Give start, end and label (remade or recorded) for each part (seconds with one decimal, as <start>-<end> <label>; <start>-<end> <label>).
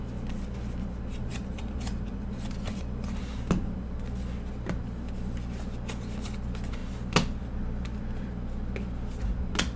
0.0-1.3 recorded; 1.3-3.2 remade; 3.2-9.8 recorded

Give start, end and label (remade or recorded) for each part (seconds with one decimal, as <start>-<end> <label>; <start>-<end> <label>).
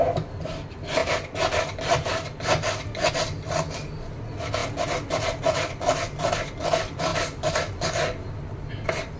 0.0-9.2 recorded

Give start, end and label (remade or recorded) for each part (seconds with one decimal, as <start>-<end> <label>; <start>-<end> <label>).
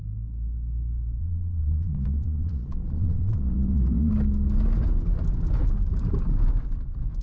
0.0-1.2 recorded; 1.2-4.1 remade; 4.1-7.2 recorded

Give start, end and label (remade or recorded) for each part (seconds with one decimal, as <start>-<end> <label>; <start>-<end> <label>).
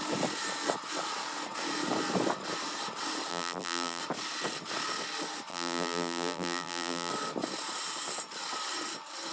0.0-3.3 recorded; 3.3-4.0 remade; 4.0-5.5 recorded; 5.5-7.1 remade; 7.1-9.3 recorded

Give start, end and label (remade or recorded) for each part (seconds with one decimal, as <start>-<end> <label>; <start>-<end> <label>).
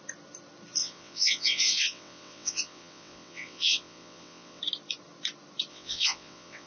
0.0-0.8 recorded; 0.8-4.6 remade; 4.6-5.7 recorded; 5.7-6.7 remade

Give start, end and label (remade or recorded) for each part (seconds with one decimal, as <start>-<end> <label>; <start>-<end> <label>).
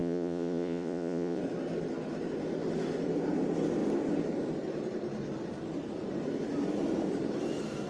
0.0-1.4 remade; 1.4-7.9 recorded